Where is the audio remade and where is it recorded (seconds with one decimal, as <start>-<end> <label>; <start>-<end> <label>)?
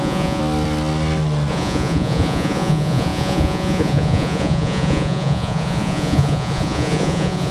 0.0-0.4 remade; 0.4-1.5 recorded; 1.5-7.5 remade